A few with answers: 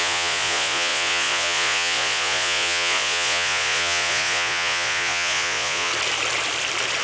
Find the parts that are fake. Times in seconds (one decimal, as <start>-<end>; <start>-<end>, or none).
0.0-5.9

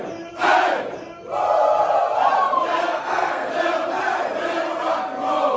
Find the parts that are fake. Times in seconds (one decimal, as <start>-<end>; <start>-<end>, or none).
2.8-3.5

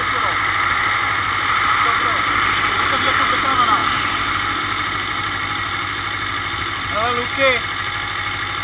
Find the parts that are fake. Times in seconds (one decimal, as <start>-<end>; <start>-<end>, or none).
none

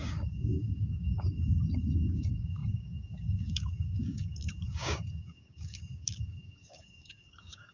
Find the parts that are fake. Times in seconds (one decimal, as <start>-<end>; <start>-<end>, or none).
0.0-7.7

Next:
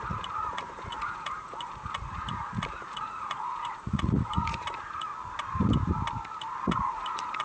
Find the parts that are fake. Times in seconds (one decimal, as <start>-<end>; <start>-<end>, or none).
0.0-5.1; 6.6-7.4